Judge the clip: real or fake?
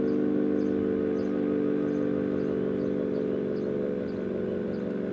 real